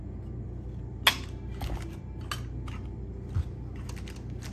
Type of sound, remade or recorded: recorded